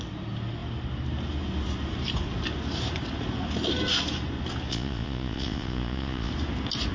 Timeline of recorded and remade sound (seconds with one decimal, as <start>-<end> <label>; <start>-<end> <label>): 0.0-4.7 recorded; 4.7-6.3 remade; 6.3-6.9 recorded